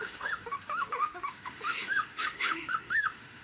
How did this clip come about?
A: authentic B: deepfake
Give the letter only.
B